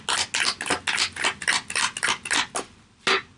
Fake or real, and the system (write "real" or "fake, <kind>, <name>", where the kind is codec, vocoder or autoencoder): real